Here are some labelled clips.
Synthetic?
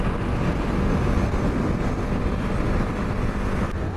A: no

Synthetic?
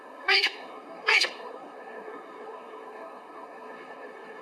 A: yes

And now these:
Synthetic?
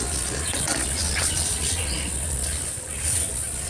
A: yes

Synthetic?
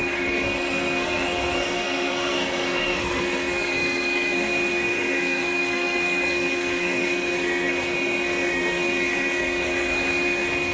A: yes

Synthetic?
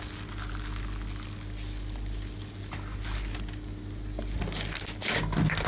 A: no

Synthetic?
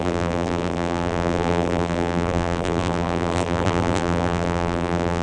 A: yes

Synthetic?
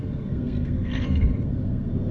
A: yes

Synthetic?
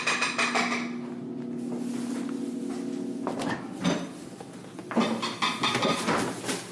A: no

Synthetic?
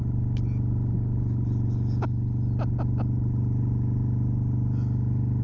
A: no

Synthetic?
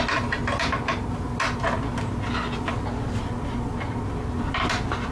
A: no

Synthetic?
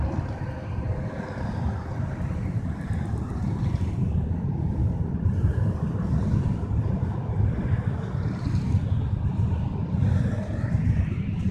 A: no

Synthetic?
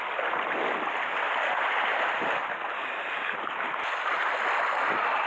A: no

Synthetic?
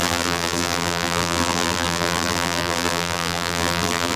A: yes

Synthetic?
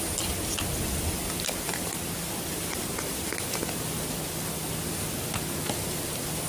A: no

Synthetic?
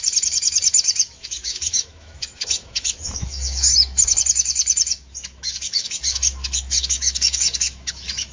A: yes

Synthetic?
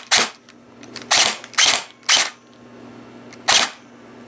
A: no